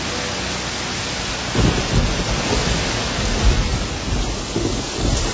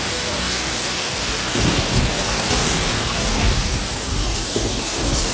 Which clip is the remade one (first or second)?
second